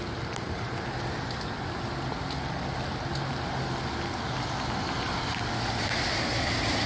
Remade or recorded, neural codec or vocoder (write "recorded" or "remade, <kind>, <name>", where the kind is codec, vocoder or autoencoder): recorded